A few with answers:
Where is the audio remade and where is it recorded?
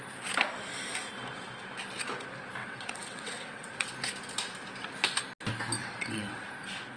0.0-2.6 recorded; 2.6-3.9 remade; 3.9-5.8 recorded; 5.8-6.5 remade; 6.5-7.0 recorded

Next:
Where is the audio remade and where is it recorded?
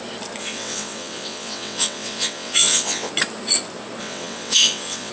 0.0-0.4 recorded; 0.4-3.1 remade; 3.1-4.0 recorded; 4.0-5.1 remade